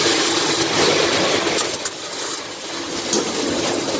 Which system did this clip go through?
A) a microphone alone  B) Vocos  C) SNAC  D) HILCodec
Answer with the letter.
A